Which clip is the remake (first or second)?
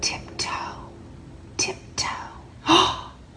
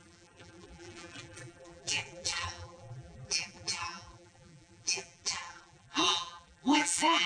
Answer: second